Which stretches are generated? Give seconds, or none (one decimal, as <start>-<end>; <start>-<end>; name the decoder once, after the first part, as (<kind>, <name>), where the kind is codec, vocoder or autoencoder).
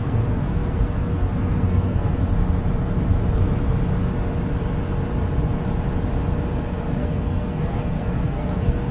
0.0-2.2 (codec, SNAC); 7.0-8.9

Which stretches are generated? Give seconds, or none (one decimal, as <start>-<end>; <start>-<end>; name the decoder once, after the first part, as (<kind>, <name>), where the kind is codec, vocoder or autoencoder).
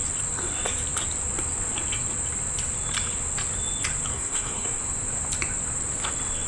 4.1-4.8 (codec, SNAC)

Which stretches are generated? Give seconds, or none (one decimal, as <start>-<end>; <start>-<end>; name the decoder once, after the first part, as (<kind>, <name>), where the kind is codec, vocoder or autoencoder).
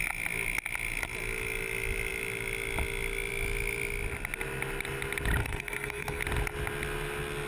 5.4-6.2 (codec, SNAC)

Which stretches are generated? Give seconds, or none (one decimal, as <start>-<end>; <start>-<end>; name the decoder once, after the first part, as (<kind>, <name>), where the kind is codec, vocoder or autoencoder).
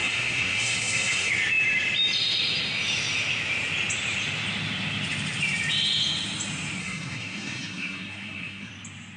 0.0-1.3 (codec, SNAC); 6.8-8.7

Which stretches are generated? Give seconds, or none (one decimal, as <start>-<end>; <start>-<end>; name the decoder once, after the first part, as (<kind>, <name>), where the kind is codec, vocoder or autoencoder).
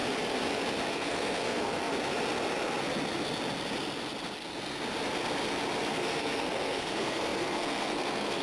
0.9-1.9 (codec, SNAC); 5.9-8.4